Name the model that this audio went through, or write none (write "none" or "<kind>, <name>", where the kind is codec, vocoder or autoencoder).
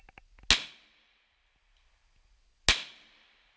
none